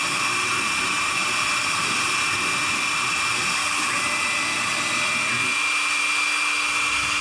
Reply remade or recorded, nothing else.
recorded